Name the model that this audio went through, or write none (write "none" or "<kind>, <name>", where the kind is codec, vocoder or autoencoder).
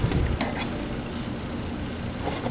none